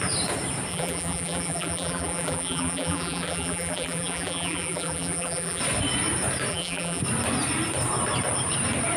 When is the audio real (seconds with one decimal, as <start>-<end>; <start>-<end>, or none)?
0.0-0.7; 5.6-6.5; 7.0-9.0

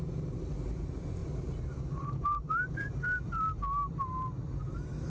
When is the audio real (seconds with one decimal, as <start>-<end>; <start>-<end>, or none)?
0.0-1.2; 3.6-5.1